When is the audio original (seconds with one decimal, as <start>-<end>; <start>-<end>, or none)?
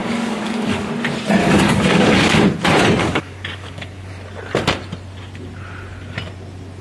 0.9-1.4; 2.4-3.0; 4.1-6.8